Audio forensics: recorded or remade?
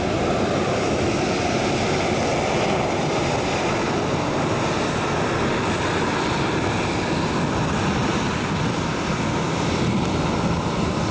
recorded